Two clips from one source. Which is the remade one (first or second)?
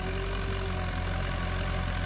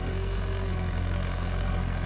second